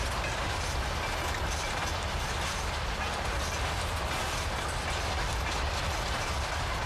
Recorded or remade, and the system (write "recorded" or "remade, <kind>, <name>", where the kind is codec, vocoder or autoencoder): recorded